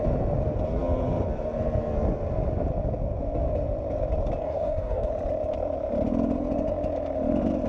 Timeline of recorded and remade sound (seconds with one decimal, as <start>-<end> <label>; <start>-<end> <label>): 0.0-4.4 recorded; 4.4-5.1 remade; 5.1-7.7 recorded